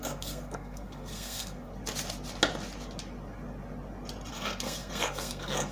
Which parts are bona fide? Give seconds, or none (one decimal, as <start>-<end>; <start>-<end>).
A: 1.7-4.3